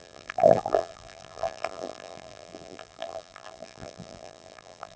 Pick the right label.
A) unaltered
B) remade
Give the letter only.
B